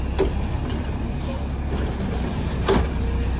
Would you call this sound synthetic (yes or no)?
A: no